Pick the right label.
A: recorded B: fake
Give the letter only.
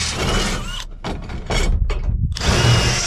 A